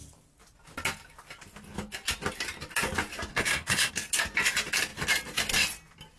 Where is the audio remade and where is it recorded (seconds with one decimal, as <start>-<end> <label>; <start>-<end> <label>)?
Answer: 0.0-3.3 recorded; 3.3-3.9 remade; 3.9-6.2 recorded